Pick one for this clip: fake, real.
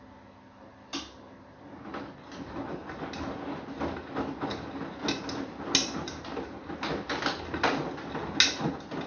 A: real